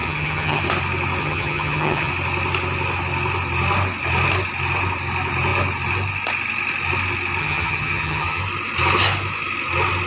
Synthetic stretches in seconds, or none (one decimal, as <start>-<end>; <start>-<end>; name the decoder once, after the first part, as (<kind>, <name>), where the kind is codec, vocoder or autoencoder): 0.0-0.6 (vocoder, HiFi-GAN); 1.2-2.1; 7.4-8.4